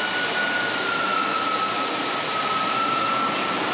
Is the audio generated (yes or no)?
no